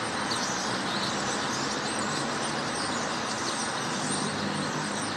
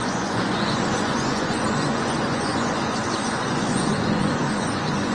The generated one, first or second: second